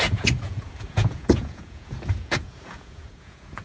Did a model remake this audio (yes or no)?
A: yes